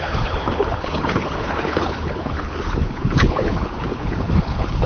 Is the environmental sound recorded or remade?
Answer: remade